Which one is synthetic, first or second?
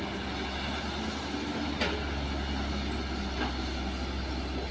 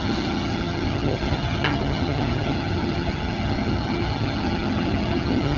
second